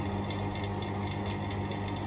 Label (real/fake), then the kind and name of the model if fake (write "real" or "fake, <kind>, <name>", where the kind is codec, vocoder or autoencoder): real